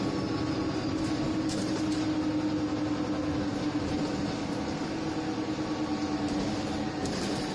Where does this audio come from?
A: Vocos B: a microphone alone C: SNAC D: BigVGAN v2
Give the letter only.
B